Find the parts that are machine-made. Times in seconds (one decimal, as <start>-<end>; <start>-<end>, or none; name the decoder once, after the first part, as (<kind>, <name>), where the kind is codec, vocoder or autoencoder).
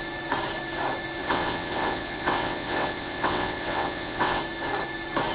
1.2-4.4 (vocoder, WaveNeXt)